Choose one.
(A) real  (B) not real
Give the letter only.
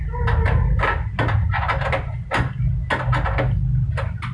A